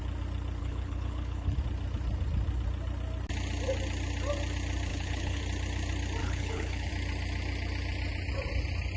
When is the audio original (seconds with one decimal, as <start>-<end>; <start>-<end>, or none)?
0.0-0.6; 1.6-4.9; 5.4-6.2; 6.9-9.0